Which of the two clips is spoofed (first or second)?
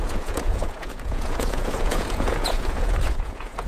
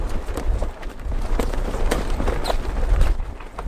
first